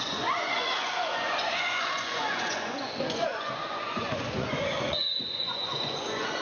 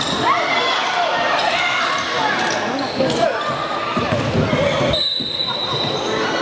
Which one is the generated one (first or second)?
first